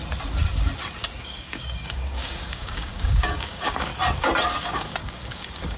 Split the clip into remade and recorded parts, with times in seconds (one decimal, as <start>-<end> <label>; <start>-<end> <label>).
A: 0.0-1.2 recorded; 1.2-3.9 remade; 3.9-4.6 recorded; 4.6-5.8 remade